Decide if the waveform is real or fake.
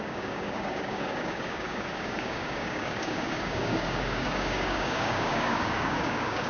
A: fake